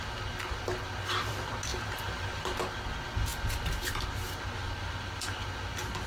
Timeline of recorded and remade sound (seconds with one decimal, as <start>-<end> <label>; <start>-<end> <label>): 0.0-1.7 recorded; 1.7-2.6 remade; 2.6-6.1 recorded